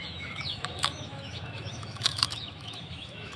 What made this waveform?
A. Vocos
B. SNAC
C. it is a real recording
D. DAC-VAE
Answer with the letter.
D